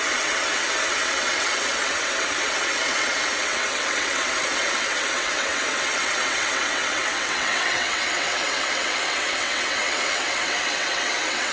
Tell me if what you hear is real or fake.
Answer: fake